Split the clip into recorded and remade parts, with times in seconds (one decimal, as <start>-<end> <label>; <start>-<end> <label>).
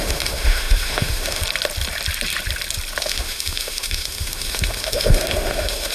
0.0-1.4 remade; 1.4-3.0 recorded; 3.0-5.9 remade